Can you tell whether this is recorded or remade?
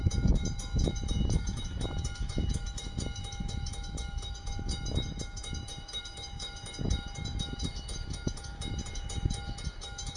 remade